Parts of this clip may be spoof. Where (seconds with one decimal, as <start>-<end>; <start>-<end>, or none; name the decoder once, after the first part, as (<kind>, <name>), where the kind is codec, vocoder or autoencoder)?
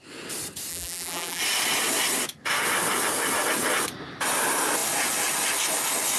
0.7-1.4 (vocoder, BigVGAN v2)